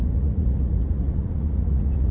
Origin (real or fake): fake